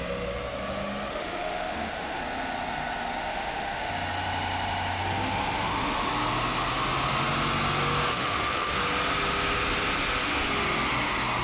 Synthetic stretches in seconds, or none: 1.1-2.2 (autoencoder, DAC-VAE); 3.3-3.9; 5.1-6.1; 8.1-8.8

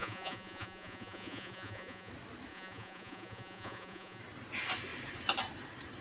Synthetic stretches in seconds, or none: 0.0-2.1 (vocoder, Vocos); 2.5-4.2

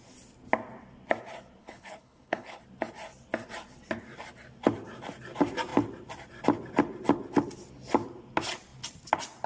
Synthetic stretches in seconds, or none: 1.6-2.6 (codec, HILCodec)

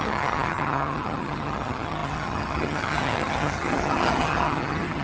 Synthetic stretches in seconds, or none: 0.0-5.0 (vocoder, HiFi-GAN)

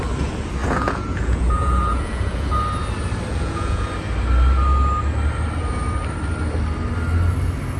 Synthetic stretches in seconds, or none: 0.6-2.5 (vocoder, Vocos); 3.3-3.9